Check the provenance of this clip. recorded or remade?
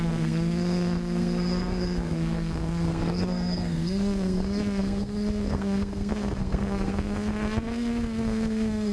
remade